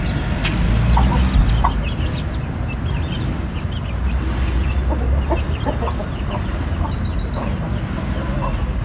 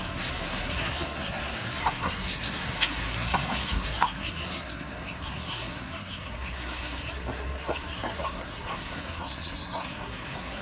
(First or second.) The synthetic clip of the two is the second